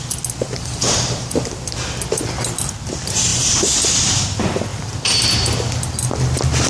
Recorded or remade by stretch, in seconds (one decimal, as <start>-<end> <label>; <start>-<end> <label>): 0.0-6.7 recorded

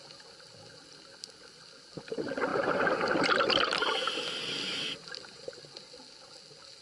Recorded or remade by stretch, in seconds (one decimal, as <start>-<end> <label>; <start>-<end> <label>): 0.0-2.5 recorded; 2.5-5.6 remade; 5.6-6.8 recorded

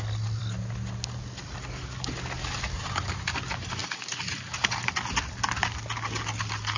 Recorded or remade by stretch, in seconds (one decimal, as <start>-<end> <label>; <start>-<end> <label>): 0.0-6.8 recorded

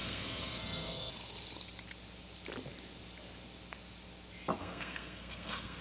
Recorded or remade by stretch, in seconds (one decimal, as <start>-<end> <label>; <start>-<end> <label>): 0.0-1.1 remade; 1.1-4.6 recorded; 4.6-5.8 remade

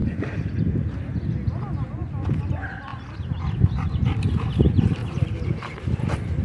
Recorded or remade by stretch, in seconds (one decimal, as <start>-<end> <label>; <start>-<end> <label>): 0.0-6.4 recorded

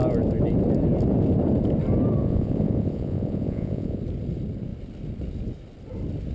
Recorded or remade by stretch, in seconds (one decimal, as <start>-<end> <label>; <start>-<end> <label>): 0.0-2.2 recorded; 2.2-4.0 remade; 4.0-6.3 recorded